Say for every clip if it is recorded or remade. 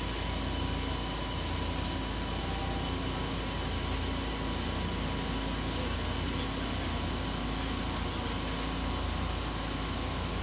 recorded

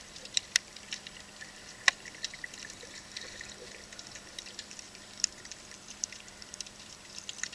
remade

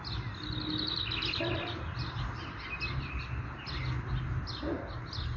recorded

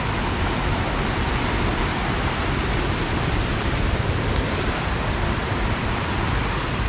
remade